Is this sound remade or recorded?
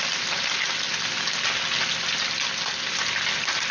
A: recorded